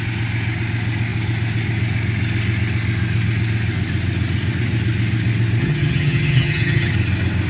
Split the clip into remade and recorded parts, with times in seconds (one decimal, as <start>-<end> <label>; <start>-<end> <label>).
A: 0.0-5.6 recorded; 5.6-6.9 remade; 6.9-7.5 recorded